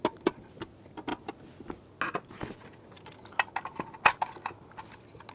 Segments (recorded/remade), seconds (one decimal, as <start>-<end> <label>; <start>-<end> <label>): 0.0-5.3 recorded